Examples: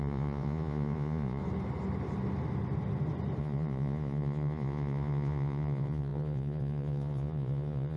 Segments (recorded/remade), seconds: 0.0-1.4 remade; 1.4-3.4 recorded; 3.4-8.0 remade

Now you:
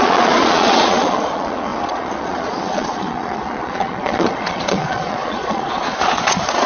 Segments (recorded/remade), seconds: 0.0-6.7 remade